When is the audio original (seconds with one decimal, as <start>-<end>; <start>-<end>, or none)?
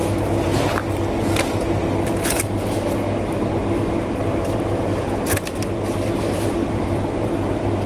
0.0-6.6; 7.1-7.9